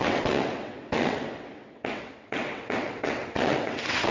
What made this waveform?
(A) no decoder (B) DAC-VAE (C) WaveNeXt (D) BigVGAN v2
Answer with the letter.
C